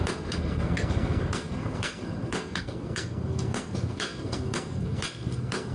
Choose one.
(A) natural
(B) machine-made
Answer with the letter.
B